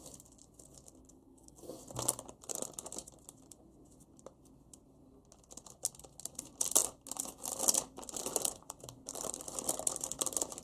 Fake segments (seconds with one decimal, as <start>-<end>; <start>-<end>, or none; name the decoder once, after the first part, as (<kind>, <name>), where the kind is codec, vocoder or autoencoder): 1.0-1.7 (codec, SNAC)